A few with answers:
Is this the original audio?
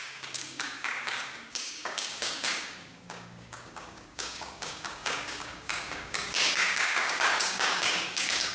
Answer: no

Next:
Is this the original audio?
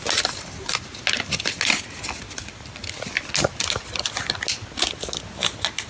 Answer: yes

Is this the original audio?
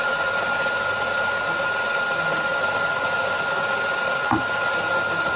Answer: yes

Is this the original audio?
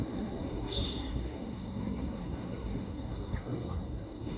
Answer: no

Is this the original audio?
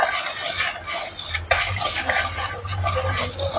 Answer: yes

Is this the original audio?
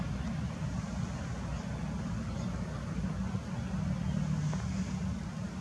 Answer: no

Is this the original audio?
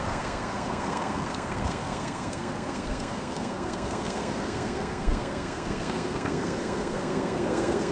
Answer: no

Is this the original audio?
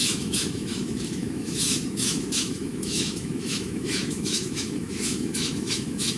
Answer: no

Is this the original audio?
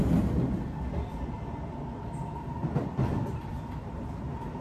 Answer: yes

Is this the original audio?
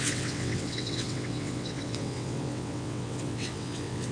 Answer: no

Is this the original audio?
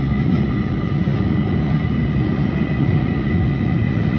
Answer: no